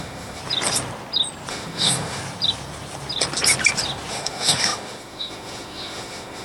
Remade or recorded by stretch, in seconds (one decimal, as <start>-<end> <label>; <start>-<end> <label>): 0.0-0.4 remade; 0.4-1.5 recorded; 1.5-2.2 remade; 2.2-4.1 recorded; 4.1-6.4 remade